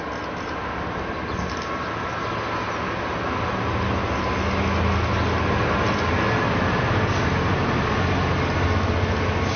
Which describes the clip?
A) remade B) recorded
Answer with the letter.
B